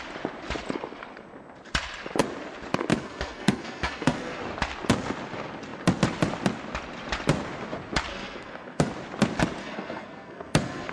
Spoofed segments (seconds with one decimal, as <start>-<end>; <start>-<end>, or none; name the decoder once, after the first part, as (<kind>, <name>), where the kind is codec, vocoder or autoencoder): 2.9-4.4 (codec, SNAC); 8.1-8.9; 9.6-10.9